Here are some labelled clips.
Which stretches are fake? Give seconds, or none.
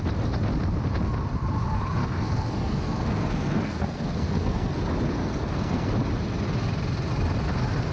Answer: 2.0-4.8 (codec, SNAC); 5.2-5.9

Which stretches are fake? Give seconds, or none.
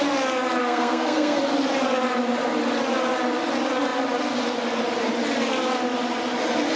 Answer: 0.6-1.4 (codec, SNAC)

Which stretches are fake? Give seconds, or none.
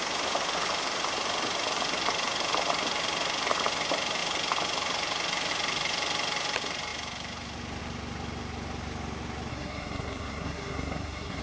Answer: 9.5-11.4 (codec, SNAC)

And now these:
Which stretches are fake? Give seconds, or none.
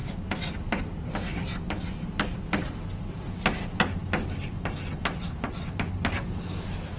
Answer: none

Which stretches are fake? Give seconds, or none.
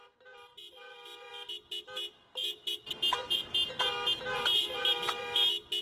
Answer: none